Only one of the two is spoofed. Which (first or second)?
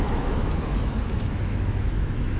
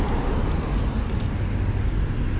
first